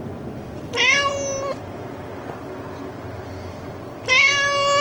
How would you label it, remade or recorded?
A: recorded